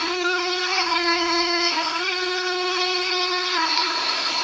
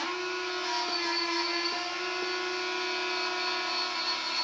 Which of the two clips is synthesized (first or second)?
first